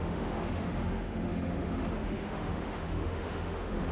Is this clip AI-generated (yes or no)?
yes